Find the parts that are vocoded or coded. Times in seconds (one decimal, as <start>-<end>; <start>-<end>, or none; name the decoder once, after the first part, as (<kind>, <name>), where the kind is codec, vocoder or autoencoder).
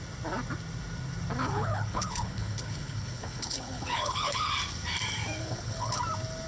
1.4-4.5 (codec, HILCodec); 5.4-6.0